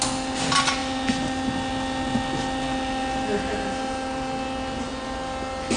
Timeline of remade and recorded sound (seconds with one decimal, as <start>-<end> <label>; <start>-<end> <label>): 0.0-5.8 recorded